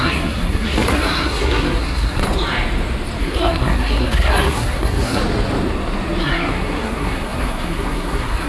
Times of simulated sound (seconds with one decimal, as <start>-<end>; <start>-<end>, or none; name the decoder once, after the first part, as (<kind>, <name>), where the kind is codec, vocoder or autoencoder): 0.0-2.2 (codec, SNAC); 3.2-5.2; 6.2-8.5